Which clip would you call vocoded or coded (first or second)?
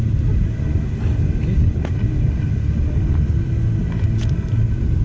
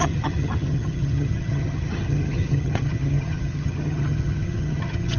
second